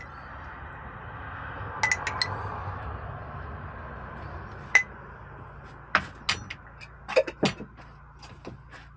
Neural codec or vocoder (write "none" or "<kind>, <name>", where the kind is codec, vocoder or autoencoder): none